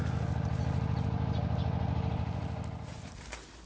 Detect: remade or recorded recorded